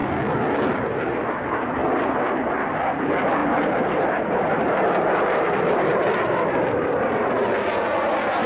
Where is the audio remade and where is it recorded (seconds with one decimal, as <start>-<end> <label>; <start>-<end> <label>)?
0.0-3.4 recorded; 3.4-7.2 remade; 7.2-8.5 recorded